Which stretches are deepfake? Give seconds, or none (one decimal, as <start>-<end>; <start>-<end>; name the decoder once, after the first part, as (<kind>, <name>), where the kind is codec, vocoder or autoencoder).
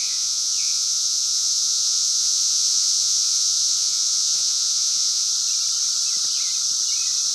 0.0-5.3 (vocoder, Vocos)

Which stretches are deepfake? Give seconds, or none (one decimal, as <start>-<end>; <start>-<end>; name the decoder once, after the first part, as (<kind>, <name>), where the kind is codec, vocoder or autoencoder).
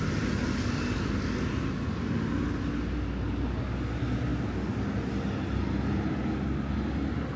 none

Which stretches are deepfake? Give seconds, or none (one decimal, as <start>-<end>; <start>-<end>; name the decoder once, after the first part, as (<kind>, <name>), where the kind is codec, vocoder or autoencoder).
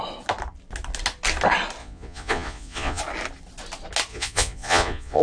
1.8-3.0 (vocoder, Vocos); 4.1-5.2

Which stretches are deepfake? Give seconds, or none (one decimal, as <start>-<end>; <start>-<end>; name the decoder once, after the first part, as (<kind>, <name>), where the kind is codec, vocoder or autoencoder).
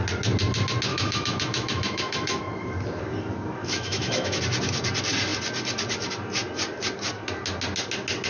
0.9-2.4 (autoencoder, DAC-VAE); 3.6-4.4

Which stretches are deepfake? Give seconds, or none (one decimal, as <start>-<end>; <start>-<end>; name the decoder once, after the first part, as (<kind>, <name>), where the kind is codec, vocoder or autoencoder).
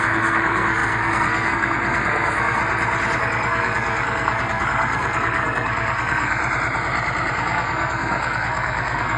0.0-2.6 (codec, SNAC); 3.2-6.4; 7.3-9.2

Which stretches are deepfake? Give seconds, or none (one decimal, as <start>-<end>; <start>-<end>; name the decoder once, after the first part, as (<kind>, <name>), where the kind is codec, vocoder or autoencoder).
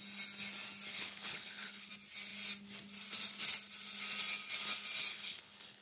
0.9-1.9 (codec, HILCodec); 5.1-5.8